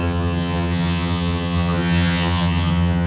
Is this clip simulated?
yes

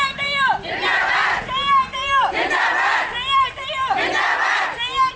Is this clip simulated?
no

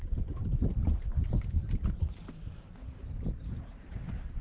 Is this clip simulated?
no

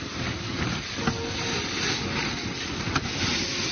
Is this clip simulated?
no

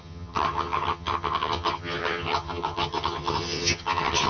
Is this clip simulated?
yes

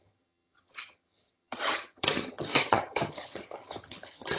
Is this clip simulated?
yes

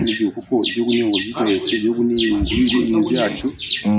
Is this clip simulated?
no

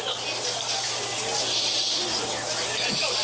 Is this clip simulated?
no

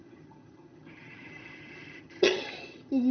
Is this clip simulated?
yes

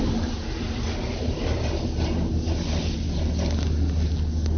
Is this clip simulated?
no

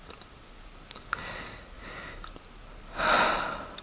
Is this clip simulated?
no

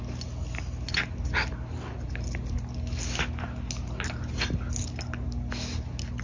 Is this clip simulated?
no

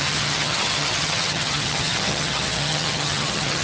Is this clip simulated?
yes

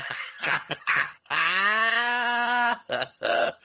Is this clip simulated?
yes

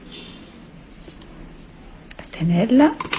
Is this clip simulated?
no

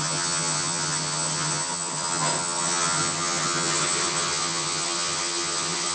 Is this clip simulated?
yes